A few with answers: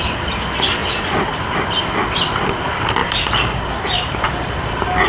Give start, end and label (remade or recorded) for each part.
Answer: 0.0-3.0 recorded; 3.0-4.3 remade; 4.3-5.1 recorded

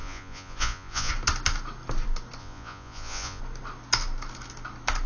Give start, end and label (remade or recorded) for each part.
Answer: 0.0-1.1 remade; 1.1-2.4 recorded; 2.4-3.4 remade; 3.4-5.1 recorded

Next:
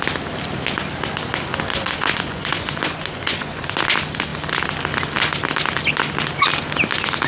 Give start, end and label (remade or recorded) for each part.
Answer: 0.0-1.7 recorded; 1.7-3.8 remade; 3.8-7.3 recorded